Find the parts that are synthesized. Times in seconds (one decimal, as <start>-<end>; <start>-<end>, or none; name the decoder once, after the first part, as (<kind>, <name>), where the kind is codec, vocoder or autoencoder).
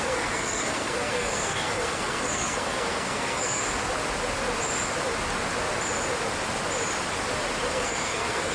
0.0-3.6 (codec, SNAC); 7.7-8.5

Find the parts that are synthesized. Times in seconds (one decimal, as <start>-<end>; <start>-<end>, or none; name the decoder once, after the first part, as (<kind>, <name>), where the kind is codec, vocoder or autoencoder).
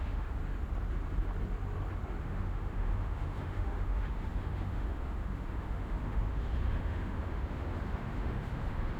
0.0-0.4 (autoencoder, DAC-VAE); 2.2-9.0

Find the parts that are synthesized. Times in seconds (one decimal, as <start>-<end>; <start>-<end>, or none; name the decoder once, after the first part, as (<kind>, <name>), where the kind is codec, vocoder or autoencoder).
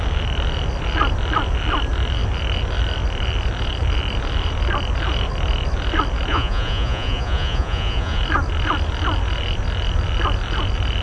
6.3-8.2 (vocoder, Vocos)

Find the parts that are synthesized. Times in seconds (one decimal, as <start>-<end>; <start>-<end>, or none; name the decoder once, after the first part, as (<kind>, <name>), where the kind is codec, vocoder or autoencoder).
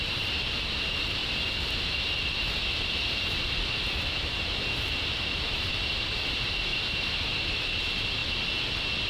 0.0-1.2 (vocoder, BigVGAN v2); 6.2-8.2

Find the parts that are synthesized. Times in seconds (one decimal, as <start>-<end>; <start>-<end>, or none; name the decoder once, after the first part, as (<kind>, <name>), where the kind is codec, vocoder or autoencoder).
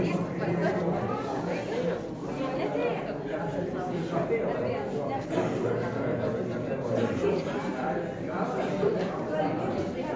none